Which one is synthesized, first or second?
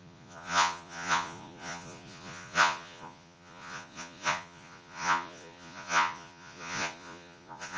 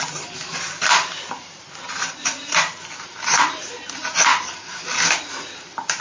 first